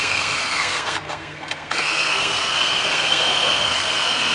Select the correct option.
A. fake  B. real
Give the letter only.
A